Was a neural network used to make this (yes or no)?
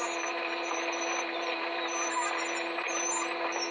no